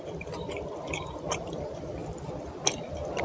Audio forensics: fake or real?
real